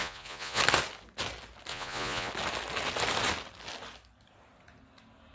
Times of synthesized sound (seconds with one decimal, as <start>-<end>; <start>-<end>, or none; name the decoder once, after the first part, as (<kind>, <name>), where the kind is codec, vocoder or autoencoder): 0.0-0.6 (vocoder, Vocos); 1.7-2.3